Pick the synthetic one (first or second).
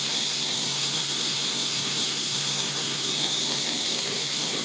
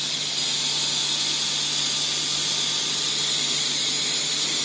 first